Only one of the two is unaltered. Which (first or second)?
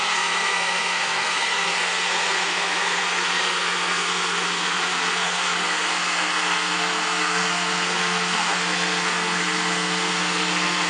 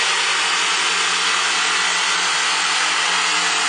second